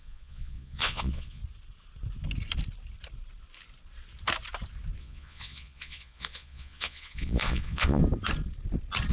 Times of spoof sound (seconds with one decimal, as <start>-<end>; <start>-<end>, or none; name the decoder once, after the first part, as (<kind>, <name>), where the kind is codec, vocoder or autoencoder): 0.0-1.4 (vocoder, Vocos); 5.0-8.0